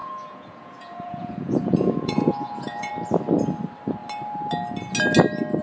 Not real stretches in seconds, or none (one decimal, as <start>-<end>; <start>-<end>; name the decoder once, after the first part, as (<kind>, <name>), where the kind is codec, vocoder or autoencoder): 0.0-2.9 (vocoder, Vocos)